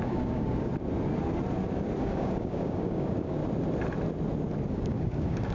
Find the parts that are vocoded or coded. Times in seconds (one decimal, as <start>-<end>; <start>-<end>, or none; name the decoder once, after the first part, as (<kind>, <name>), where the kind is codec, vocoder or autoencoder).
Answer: 0.0-0.7 (codec, DAC); 2.0-3.4; 4.7-5.5